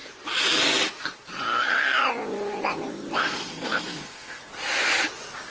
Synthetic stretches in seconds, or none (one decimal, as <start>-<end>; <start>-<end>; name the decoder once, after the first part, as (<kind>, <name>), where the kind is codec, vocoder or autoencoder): 3.2-4.4 (codec, SNAC)